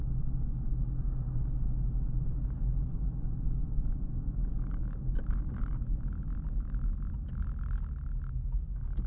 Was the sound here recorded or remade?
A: recorded